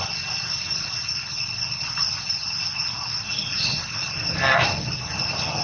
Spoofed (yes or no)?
no